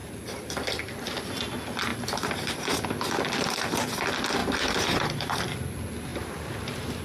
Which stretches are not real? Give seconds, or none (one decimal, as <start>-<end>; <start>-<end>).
0.0-1.2; 1.9-2.9; 4.4-5.4; 6.1-7.0